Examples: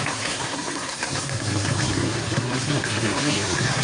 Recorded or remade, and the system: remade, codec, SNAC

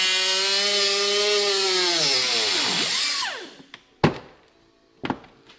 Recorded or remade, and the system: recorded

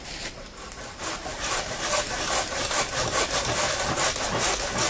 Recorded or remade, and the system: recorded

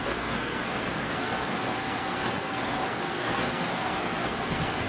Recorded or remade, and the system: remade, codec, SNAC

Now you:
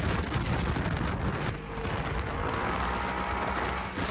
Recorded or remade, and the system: recorded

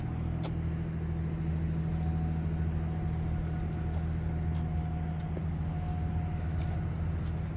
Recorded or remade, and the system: recorded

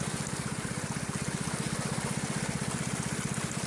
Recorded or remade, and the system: recorded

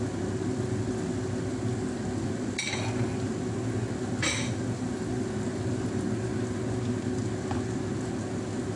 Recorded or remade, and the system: recorded